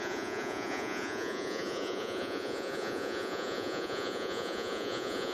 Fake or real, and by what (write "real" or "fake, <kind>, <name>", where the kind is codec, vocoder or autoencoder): fake, vocoder, Vocos